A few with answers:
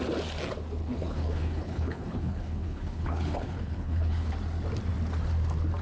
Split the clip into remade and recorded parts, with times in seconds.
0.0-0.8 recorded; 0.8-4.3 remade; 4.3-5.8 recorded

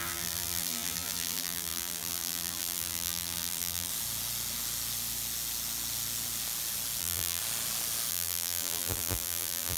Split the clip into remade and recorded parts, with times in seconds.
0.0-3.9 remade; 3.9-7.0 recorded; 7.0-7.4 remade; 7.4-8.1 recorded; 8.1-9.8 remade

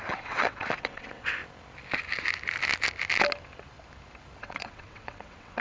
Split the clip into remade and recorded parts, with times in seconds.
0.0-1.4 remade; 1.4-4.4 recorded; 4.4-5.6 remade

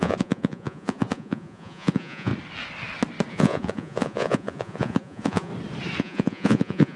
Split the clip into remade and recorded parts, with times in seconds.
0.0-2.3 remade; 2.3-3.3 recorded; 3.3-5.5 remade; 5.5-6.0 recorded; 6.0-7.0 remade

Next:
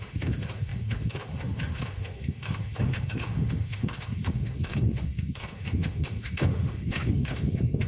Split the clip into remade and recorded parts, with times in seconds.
0.0-7.9 remade